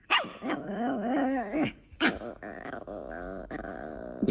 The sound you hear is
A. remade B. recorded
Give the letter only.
A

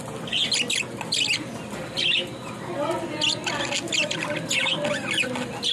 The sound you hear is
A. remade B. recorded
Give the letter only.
B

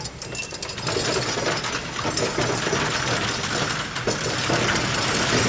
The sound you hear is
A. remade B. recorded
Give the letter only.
B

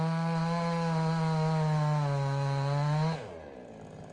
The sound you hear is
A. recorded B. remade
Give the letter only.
A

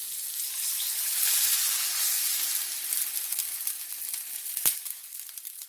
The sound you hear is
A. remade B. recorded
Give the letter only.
B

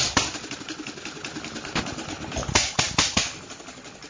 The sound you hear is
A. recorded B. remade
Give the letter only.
B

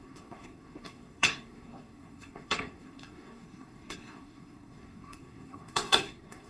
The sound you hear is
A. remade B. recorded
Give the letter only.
A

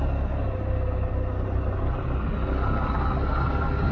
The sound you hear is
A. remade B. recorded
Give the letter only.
B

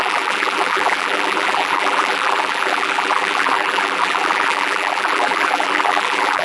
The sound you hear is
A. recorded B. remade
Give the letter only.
B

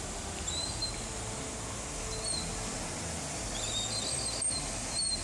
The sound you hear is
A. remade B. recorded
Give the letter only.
B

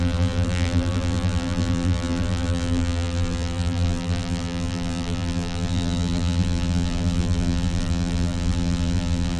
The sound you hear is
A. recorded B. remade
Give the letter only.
B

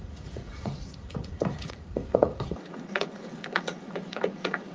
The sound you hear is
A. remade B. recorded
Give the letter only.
A